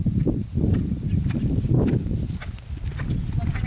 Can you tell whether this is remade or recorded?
remade